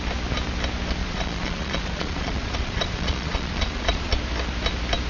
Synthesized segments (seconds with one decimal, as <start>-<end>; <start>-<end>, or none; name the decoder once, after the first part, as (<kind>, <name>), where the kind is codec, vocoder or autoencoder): 1.0-4.1 (vocoder, Vocos)